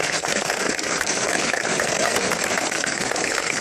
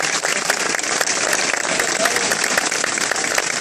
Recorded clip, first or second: second